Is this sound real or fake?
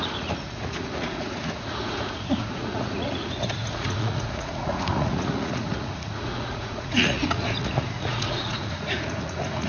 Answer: fake